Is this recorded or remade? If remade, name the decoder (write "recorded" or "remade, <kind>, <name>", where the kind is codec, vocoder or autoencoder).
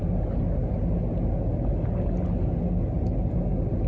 recorded